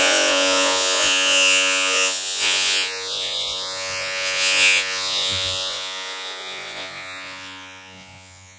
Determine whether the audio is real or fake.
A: fake